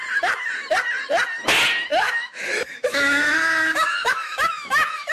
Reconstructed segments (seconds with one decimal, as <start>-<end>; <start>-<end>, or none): 1.9-5.1